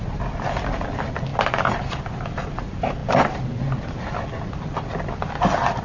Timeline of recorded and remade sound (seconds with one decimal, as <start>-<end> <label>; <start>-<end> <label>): 0.0-5.8 recorded